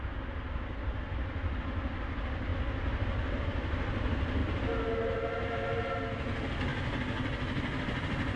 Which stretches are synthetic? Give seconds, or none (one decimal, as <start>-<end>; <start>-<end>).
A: none